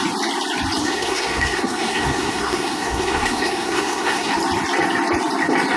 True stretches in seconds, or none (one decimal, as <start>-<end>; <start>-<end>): 0.0-0.8; 4.3-5.8